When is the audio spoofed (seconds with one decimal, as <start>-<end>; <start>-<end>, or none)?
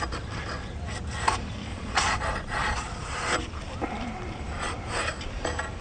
1.7-2.2; 2.6-3.2